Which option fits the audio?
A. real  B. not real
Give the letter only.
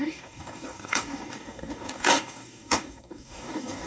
B